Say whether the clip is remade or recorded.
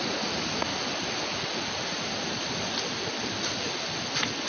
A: remade